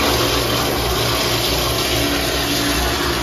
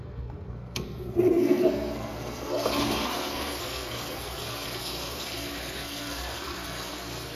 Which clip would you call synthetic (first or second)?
second